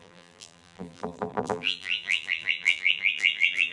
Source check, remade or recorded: remade